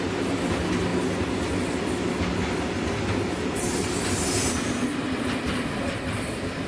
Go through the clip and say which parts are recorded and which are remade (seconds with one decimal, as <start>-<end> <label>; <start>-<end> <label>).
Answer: 0.0-6.7 recorded